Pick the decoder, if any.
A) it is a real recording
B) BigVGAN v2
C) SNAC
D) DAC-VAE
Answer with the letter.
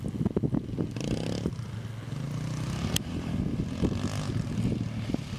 A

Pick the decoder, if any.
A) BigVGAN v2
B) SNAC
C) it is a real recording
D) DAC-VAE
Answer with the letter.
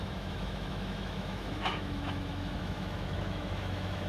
D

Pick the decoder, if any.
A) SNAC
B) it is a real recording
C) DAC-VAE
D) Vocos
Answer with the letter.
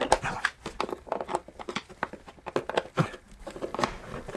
B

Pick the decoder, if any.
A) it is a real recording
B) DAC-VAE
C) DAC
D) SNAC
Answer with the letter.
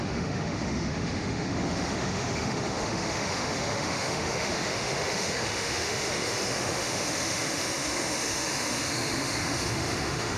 B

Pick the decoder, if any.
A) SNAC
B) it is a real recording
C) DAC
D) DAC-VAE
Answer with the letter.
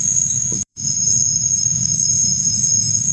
D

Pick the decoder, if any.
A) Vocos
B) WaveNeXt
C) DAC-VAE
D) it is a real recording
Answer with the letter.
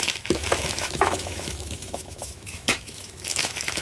C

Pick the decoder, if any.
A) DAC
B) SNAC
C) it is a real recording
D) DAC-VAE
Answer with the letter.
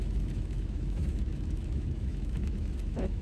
D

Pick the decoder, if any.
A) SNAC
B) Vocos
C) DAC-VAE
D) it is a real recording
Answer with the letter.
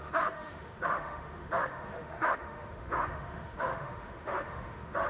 C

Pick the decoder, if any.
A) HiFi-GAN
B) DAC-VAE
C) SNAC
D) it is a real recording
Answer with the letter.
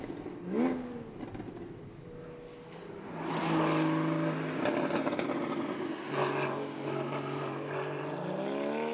D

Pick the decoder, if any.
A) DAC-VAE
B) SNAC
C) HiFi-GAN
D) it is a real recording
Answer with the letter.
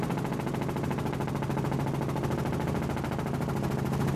D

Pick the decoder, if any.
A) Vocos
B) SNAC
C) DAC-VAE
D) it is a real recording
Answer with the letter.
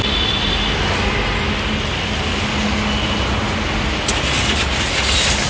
D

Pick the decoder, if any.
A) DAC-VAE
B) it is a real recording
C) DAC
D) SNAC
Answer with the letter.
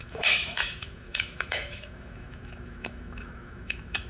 A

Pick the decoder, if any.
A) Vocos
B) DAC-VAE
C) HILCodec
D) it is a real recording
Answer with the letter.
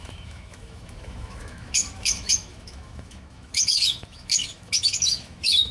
B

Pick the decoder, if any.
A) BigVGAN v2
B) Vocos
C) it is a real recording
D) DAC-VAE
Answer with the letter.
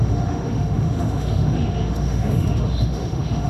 D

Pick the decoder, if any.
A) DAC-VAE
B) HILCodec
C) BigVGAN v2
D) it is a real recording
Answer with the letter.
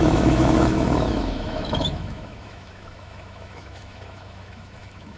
A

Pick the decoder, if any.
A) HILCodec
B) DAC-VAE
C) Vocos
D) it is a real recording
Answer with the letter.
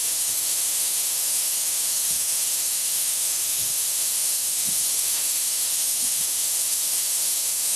B